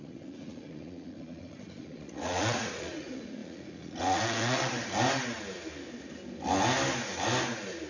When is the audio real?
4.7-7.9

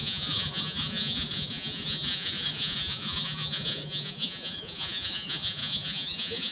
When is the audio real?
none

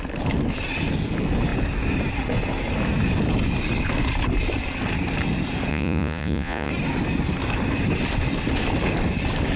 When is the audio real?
0.0-5.7; 6.7-9.6

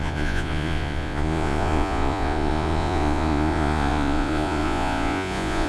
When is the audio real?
none